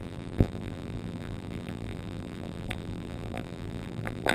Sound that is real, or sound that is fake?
fake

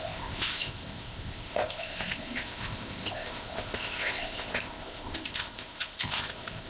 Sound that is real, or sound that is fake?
fake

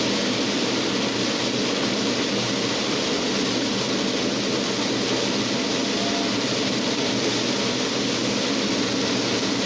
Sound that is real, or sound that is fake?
real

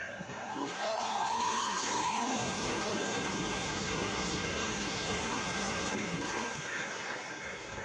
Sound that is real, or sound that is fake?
fake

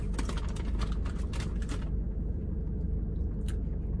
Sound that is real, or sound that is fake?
real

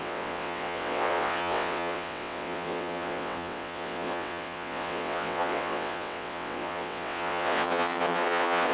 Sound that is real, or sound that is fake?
fake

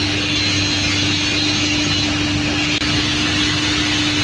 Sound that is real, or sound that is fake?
real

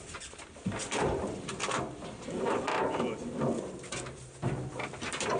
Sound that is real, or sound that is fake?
fake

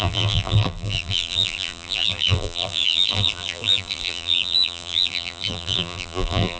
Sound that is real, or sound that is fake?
fake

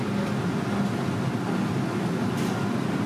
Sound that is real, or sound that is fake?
real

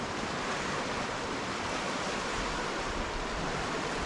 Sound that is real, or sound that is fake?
fake